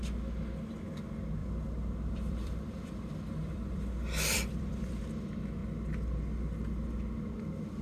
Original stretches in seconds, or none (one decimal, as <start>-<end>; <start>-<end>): 0.0-1.4; 5.0-7.8